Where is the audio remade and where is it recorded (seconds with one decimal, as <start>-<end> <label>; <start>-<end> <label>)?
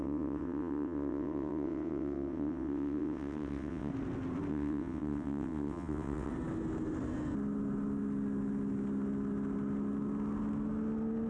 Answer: 0.0-3.9 remade; 3.9-4.5 recorded; 4.5-6.3 remade; 6.3-11.3 recorded